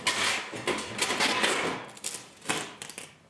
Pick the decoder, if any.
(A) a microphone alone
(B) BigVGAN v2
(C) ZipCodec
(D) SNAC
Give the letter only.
A